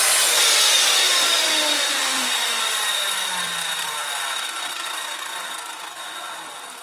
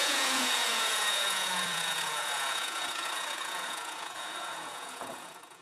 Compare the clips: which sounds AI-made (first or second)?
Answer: second